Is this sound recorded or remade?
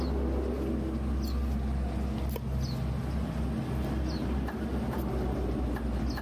recorded